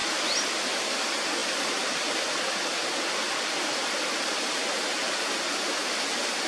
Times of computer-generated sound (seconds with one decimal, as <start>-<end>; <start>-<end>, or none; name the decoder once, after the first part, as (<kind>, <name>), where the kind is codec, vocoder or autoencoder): none